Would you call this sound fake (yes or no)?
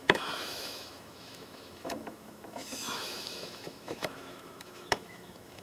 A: yes